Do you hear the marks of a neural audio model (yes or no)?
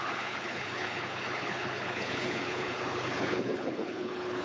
yes